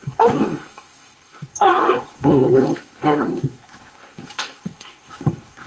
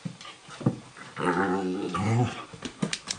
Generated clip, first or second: first